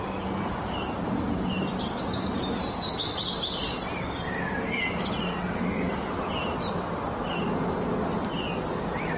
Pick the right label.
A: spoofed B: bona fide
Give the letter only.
B